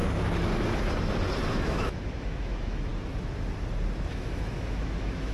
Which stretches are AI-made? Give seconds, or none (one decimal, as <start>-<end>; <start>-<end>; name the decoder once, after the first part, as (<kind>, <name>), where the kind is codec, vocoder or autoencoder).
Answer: 1.5-2.9 (autoencoder, DAC-VAE); 4.1-5.3